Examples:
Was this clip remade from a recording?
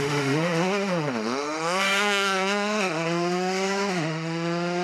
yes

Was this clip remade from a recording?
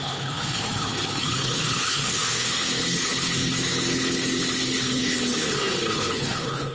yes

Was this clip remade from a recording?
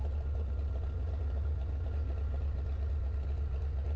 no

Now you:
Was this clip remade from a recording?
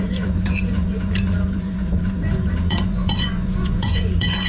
yes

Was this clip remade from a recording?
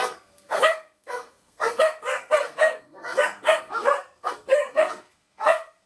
yes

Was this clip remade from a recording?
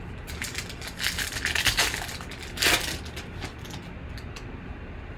no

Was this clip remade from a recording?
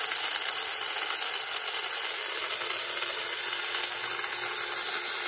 no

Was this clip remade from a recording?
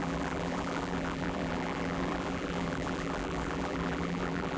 yes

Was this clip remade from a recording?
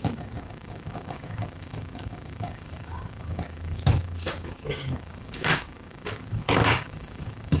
yes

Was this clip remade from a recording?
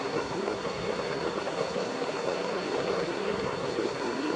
yes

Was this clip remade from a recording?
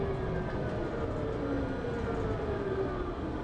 no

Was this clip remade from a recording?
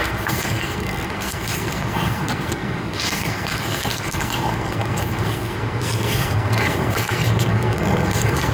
yes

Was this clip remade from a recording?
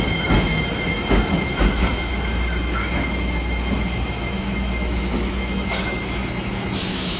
yes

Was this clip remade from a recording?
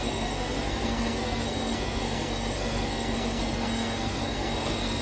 yes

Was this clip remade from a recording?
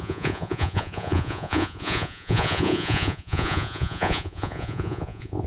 yes